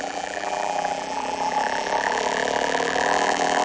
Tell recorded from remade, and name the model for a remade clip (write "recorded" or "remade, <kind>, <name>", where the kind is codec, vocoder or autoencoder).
remade, vocoder, BigVGAN v2